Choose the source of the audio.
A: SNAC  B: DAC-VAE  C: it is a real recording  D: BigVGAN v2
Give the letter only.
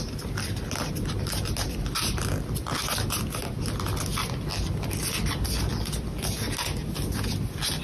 C